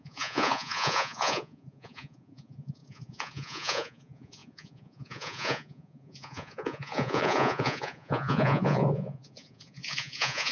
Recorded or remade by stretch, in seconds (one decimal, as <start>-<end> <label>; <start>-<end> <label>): 0.0-10.5 remade